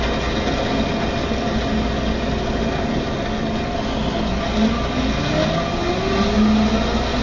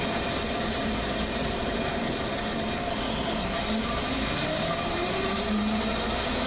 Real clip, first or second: first